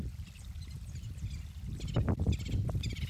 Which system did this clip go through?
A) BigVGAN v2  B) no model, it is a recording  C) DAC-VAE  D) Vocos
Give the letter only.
B